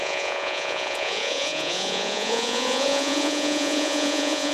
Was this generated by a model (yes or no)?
yes